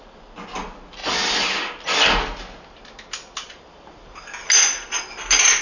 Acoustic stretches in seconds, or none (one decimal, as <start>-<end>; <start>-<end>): 0.0-1.0; 4.4-5.6